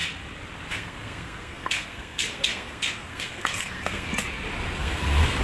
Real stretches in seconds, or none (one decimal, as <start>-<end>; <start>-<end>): 0.0-0.7; 4.1-4.8